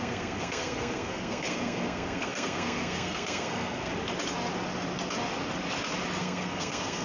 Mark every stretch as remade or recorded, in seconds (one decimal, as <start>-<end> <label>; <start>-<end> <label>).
0.0-3.9 remade; 3.9-6.2 recorded; 6.2-7.0 remade